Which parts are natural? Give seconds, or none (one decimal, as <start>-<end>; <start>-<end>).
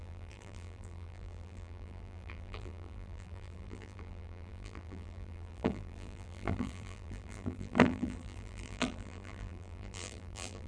none